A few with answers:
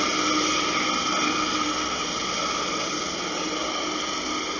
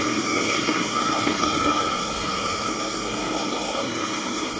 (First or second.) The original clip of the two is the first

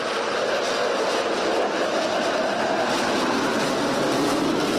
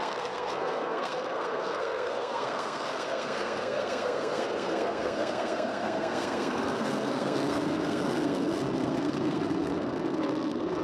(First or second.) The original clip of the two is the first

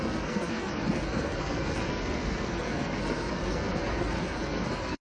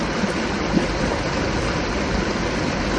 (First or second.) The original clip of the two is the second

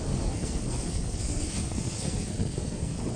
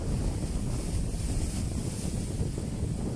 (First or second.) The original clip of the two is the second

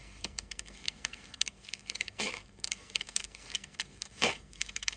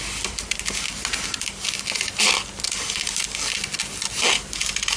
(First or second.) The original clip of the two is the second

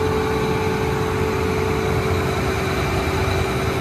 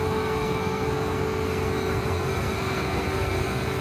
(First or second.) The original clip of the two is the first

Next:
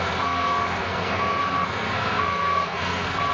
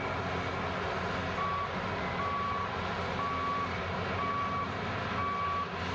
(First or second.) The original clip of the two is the second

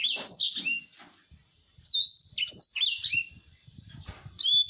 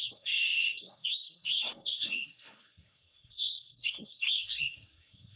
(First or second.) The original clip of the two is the first